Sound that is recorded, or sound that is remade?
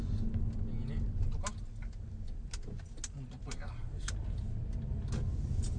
recorded